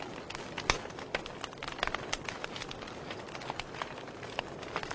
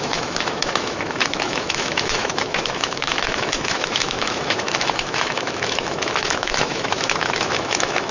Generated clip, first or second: second